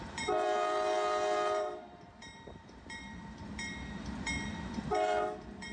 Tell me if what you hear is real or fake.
fake